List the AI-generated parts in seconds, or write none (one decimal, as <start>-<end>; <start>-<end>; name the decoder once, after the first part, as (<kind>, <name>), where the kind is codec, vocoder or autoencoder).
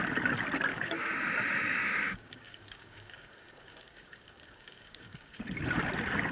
0.7-1.2 (codec, DAC); 1.8-5.4